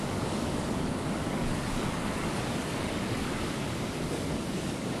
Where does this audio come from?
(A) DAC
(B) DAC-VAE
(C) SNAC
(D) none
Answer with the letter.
A